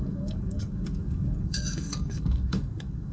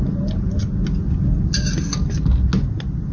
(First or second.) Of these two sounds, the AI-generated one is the first